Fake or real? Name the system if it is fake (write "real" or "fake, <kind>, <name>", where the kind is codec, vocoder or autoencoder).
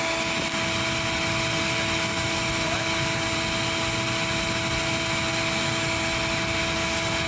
real